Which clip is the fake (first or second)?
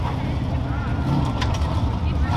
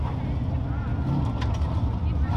first